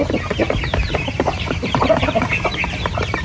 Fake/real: fake